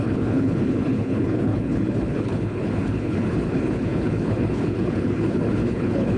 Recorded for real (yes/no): no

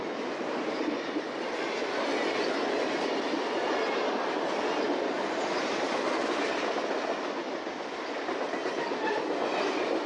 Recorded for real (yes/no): yes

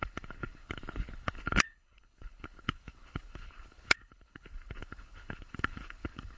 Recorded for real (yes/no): no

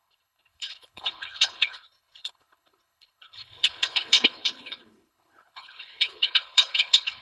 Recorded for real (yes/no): no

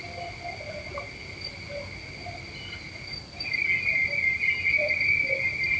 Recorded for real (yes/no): yes